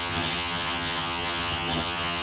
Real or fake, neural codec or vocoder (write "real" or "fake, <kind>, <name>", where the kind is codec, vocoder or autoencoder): fake, vocoder, HiFi-GAN